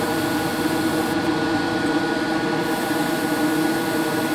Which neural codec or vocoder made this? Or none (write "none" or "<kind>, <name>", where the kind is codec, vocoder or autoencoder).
none